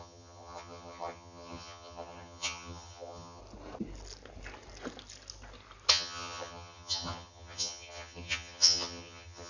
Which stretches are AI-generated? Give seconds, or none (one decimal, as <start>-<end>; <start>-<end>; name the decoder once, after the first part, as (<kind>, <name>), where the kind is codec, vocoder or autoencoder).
0.0-3.4 (vocoder, HiFi-GAN); 5.9-9.5